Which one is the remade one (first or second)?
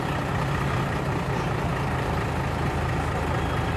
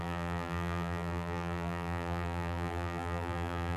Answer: second